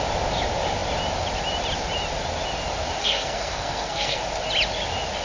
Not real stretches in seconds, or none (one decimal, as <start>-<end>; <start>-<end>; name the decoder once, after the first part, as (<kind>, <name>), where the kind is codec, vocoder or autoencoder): 3.0-4.2 (codec, SNAC)